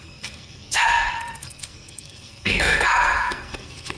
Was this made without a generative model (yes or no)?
no